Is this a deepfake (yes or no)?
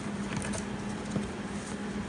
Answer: no